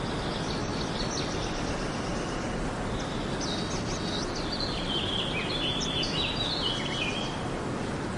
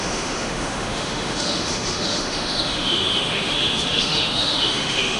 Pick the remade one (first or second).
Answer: second